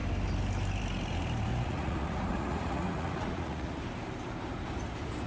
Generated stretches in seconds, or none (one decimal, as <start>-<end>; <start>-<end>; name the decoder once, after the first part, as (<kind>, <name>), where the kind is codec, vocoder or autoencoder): 1.5-3.8 (vocoder, Vocos)